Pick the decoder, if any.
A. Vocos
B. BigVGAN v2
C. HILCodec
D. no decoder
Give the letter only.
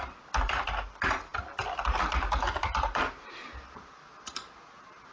D